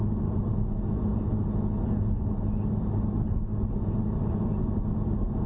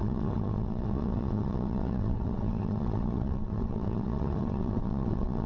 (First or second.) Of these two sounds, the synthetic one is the second